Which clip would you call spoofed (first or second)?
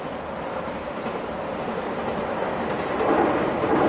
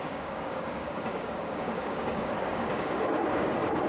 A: second